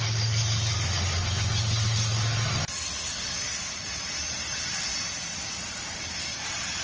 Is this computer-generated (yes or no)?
no